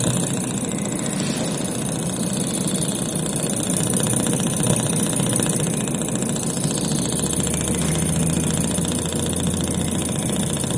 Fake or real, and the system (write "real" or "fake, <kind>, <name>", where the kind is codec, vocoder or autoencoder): real